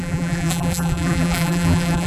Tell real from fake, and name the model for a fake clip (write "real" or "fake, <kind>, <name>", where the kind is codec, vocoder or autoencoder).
fake, vocoder, BigVGAN v2